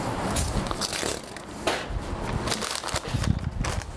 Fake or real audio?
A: real